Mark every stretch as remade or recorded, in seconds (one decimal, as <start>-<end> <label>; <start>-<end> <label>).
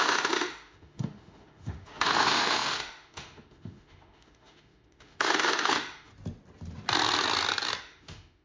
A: 0.0-6.1 remade; 6.1-7.8 recorded; 7.8-8.4 remade